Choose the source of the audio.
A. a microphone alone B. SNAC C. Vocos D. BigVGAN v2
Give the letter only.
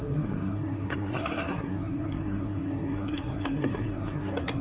B